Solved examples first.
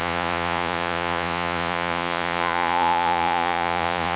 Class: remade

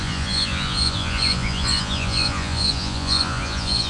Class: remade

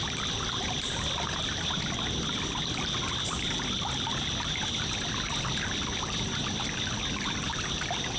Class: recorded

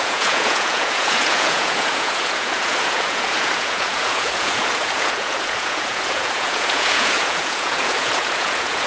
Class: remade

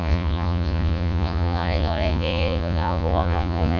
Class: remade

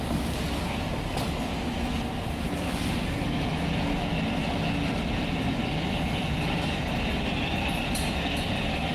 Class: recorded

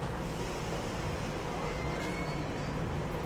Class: recorded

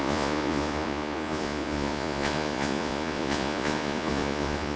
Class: remade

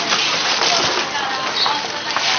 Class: recorded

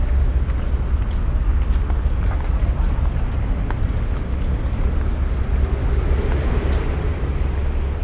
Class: recorded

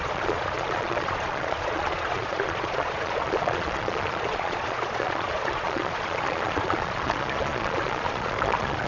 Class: remade